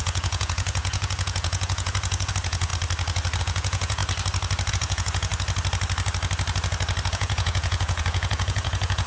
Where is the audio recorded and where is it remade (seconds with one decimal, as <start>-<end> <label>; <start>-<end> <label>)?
0.0-2.7 remade; 2.7-3.4 recorded; 3.4-4.0 remade; 4.0-4.7 recorded; 4.7-5.3 remade; 5.3-7.1 recorded; 7.1-9.1 remade